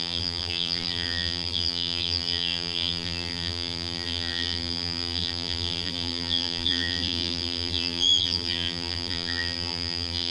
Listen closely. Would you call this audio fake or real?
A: fake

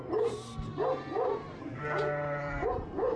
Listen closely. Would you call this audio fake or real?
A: fake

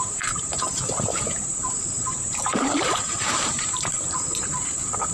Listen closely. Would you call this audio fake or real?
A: fake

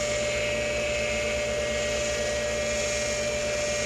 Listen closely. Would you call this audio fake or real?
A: real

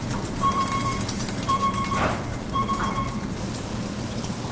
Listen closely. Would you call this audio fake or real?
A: fake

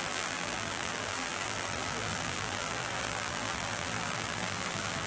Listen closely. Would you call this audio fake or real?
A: fake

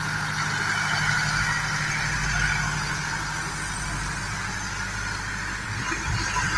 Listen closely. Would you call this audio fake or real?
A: real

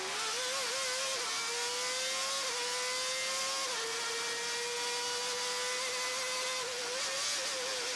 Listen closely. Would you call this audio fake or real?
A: real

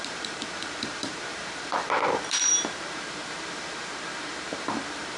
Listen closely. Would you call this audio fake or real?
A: fake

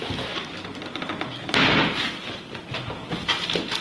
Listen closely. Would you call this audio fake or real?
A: real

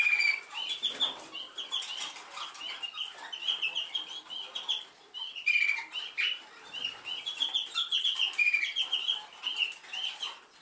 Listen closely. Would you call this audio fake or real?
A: fake